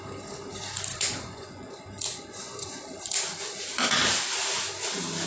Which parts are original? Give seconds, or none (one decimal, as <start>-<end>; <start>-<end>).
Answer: 0.0-0.9; 1.7-2.1; 2.8-5.3